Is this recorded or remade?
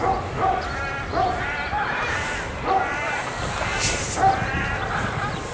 recorded